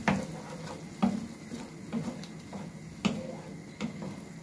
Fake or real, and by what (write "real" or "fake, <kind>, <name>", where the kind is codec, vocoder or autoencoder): real